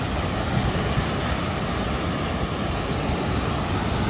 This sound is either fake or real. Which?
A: real